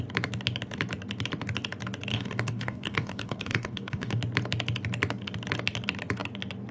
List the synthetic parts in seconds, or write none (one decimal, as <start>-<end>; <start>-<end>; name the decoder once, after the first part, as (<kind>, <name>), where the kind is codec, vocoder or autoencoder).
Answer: 2.1-4.2 (codec, DAC)